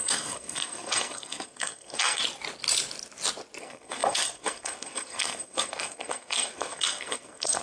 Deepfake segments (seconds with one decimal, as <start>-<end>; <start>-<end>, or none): 0.0-2.2; 3.6-7.6